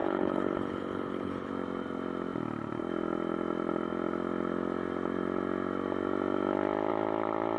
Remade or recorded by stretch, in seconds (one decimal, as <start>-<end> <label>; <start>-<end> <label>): 0.0-1.5 remade; 1.5-7.6 recorded